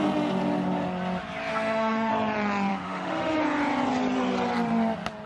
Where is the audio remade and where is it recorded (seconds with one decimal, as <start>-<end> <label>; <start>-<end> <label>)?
0.0-1.5 recorded; 1.5-2.1 remade; 2.1-2.7 recorded; 2.7-3.4 remade; 3.4-5.3 recorded